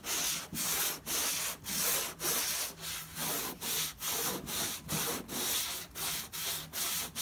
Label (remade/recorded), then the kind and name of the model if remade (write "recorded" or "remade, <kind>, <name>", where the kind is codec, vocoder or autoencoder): recorded